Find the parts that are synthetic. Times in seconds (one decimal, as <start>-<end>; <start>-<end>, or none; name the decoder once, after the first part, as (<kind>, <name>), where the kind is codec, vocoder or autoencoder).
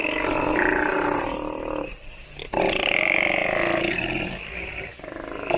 none